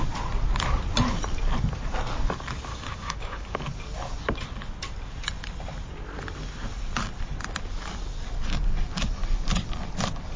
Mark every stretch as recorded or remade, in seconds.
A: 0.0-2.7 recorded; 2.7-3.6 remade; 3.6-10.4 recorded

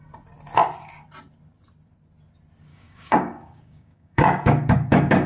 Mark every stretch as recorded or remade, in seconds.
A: 0.0-2.7 recorded; 2.7-5.3 remade

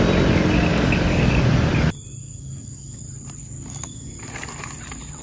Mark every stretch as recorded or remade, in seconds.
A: 0.0-0.7 recorded; 0.7-1.4 remade; 1.4-2.2 recorded; 2.2-3.0 remade; 3.0-3.4 recorded; 3.4-4.1 remade; 4.1-5.2 recorded

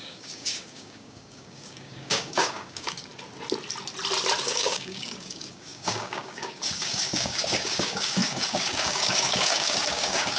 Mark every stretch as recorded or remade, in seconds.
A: 0.0-3.1 remade; 3.1-4.4 recorded; 4.4-10.4 remade

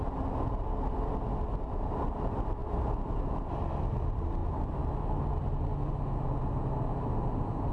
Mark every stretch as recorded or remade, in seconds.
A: 0.0-7.7 recorded

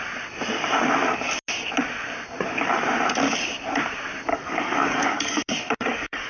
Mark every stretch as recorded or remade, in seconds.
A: 0.0-4.3 recorded; 4.3-6.3 remade